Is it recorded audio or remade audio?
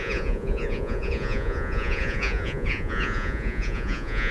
remade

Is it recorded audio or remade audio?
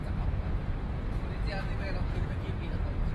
remade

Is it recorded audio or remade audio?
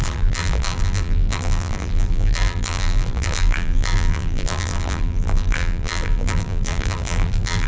remade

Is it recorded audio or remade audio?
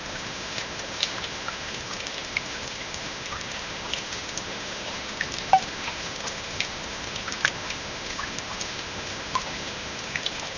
remade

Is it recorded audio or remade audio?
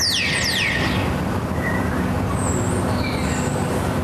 recorded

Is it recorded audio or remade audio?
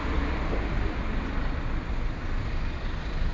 recorded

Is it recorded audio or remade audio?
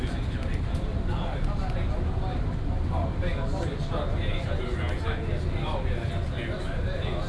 recorded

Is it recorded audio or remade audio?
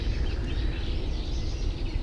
recorded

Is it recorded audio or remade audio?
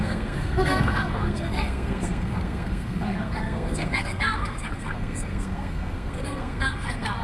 remade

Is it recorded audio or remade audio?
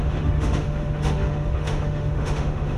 remade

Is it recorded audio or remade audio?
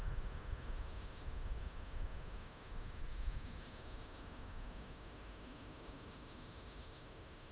remade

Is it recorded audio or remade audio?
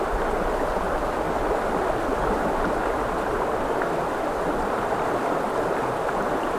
recorded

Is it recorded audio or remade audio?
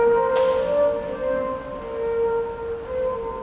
recorded